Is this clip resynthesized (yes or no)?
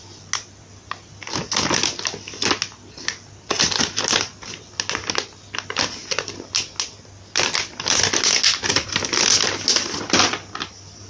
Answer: no